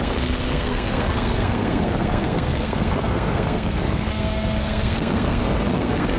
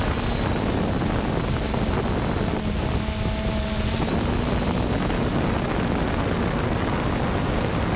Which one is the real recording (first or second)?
second